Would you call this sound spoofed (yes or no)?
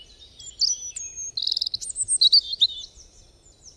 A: no